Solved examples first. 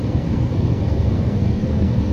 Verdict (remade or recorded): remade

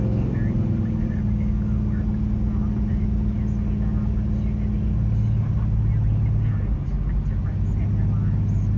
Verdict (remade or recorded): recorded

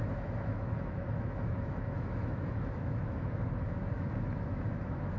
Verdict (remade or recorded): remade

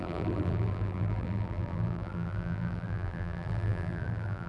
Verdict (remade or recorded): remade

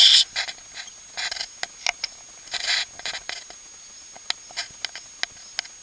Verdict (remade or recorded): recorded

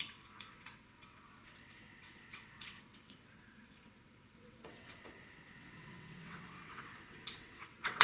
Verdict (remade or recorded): remade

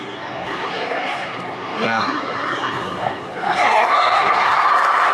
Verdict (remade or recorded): remade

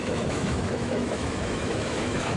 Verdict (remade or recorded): remade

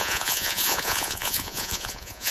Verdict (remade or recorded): remade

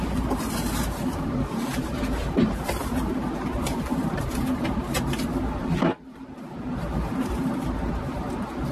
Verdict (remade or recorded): remade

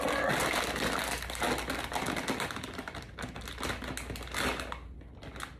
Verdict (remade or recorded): recorded